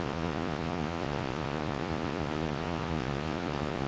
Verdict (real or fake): fake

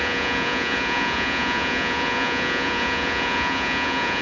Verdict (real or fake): fake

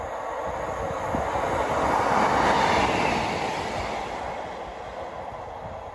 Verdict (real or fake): real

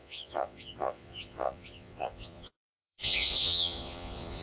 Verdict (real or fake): fake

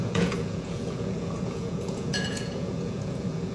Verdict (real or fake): fake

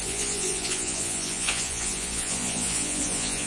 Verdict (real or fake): fake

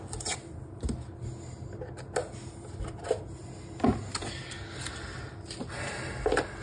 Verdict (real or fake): real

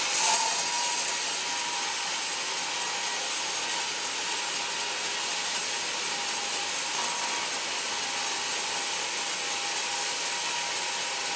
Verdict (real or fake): real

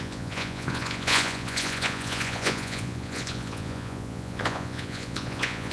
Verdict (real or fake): fake